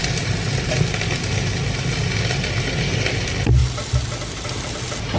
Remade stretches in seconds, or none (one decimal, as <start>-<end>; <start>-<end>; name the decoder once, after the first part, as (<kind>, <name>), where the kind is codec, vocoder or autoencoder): none